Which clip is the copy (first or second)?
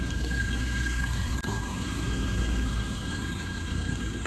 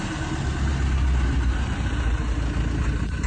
first